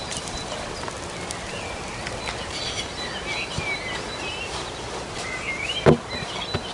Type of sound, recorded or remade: recorded